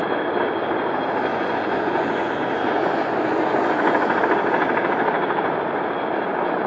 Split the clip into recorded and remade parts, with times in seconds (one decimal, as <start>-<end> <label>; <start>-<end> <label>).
0.0-1.3 recorded; 1.3-4.2 remade; 4.2-6.7 recorded